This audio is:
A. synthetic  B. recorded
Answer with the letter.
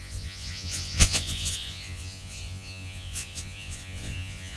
A